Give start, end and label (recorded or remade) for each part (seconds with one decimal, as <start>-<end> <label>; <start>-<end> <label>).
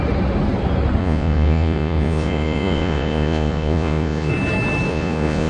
0.0-1.0 recorded; 1.0-4.3 remade; 4.3-4.9 recorded; 4.9-5.5 remade